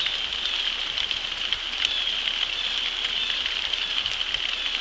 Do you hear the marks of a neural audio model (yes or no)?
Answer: no